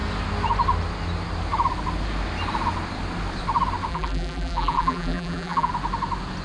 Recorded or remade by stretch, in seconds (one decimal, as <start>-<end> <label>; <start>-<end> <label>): 0.0-3.9 recorded; 3.9-5.7 remade; 5.7-6.4 recorded

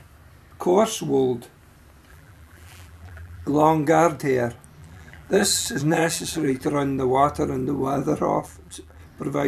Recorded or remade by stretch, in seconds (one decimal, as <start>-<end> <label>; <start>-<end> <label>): 0.0-2.1 recorded; 2.1-3.5 remade; 3.5-4.8 recorded; 4.8-6.7 remade; 6.7-8.4 recorded; 8.4-9.0 remade; 9.0-9.5 recorded

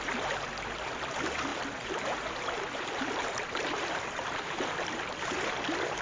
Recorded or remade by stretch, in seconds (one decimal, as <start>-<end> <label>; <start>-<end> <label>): 0.0-1.5 recorded; 1.5-5.1 remade; 5.1-6.0 recorded

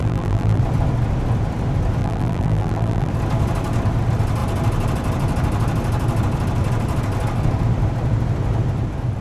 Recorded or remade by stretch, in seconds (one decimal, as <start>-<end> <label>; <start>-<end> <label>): 0.0-0.6 remade; 0.6-2.0 recorded; 2.0-3.1 remade; 3.1-9.2 recorded

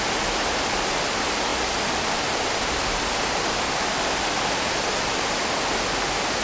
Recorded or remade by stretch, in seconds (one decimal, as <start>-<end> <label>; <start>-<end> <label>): 0.0-6.4 recorded

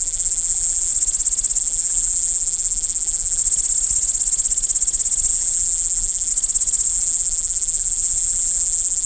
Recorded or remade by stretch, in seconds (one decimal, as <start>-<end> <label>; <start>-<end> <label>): 0.0-0.9 remade; 0.9-1.6 recorded; 1.6-3.4 remade; 3.4-5.3 recorded; 5.3-6.3 remade; 6.3-6.9 recorded; 6.9-9.1 remade